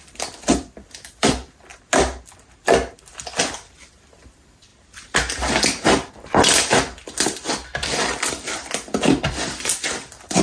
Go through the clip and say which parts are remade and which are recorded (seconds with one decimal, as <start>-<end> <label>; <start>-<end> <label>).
0.0-1.7 remade; 1.7-3.0 recorded; 3.0-4.7 remade; 4.7-6.6 recorded; 6.6-10.4 remade